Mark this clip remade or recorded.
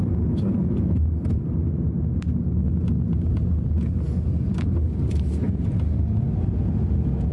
recorded